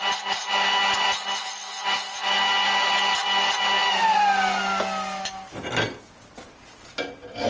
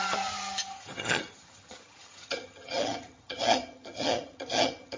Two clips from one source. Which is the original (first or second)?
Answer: first